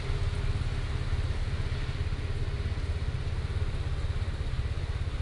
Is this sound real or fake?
real